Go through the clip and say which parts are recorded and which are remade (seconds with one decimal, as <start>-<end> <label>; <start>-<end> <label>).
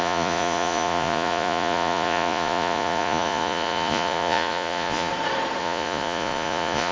0.0-5.1 remade; 5.1-5.6 recorded; 5.6-6.9 remade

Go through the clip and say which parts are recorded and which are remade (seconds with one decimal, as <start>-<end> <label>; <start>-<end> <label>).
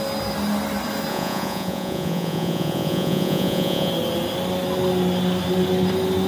0.0-1.1 recorded; 1.1-3.9 remade; 3.9-6.3 recorded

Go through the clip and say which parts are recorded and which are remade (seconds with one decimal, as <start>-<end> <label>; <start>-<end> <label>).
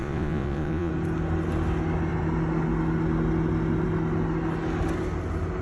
0.0-0.9 remade; 0.9-5.6 recorded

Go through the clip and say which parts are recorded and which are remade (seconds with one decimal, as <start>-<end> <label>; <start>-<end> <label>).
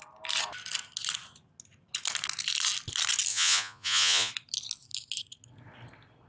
0.0-3.3 recorded; 3.3-4.3 remade; 4.3-6.3 recorded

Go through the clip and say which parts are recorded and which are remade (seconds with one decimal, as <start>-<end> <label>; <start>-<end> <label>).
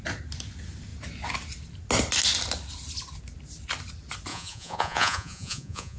0.0-4.3 recorded; 4.3-6.0 remade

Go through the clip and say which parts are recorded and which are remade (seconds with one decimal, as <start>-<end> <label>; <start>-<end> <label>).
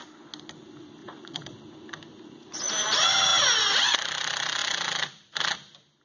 0.0-1.0 recorded; 1.0-1.6 remade; 1.6-2.1 recorded; 2.1-2.7 remade; 2.7-6.0 recorded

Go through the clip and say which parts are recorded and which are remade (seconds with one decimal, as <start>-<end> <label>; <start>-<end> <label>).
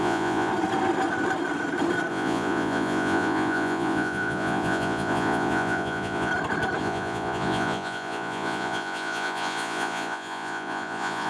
0.0-0.5 remade; 0.5-2.1 recorded; 2.1-6.3 remade; 6.3-6.8 recorded; 6.8-11.3 remade